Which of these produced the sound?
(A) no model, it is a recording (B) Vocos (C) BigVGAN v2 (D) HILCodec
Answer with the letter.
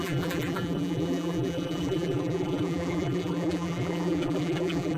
C